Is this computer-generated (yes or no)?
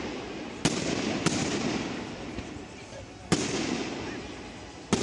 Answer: no